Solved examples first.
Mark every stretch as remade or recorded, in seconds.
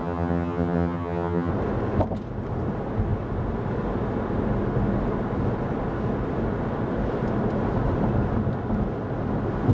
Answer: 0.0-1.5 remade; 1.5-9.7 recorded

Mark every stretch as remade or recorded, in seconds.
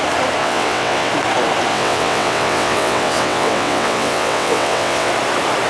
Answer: 0.0-0.4 recorded; 0.4-1.1 remade; 1.1-1.7 recorded; 1.7-5.1 remade; 5.1-5.7 recorded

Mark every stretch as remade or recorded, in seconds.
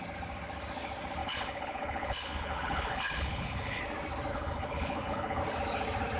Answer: 0.0-1.2 recorded; 1.2-3.8 remade; 3.8-4.3 recorded; 4.3-5.4 remade; 5.4-6.2 recorded